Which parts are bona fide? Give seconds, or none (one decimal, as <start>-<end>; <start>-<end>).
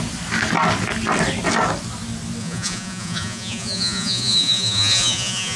0.0-2.4